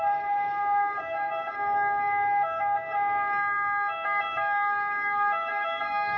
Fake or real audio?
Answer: fake